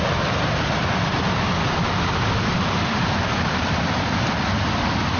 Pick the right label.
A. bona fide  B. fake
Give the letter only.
A